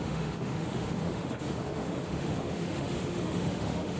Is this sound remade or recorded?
remade